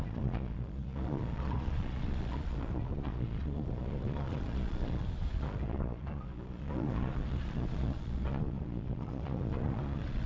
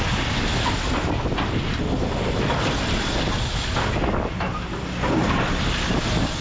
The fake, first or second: first